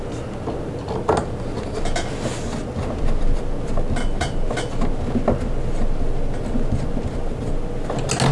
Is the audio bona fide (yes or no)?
yes